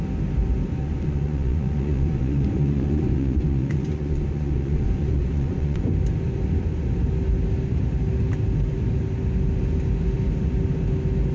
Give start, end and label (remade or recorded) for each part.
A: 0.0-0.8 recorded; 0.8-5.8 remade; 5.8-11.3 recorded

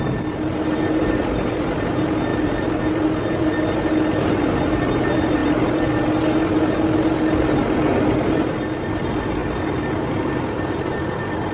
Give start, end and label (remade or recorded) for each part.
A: 0.0-11.5 recorded

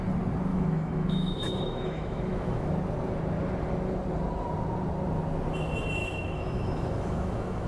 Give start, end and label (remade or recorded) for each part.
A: 0.0-0.5 recorded; 0.5-2.7 remade; 2.7-6.0 recorded; 6.0-7.7 remade

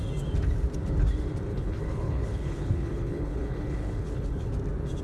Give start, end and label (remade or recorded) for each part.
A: 0.0-1.5 recorded; 1.5-4.5 remade; 4.5-5.0 recorded